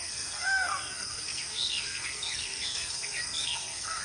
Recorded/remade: remade